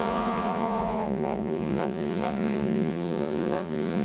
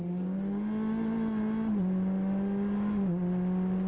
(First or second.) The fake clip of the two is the first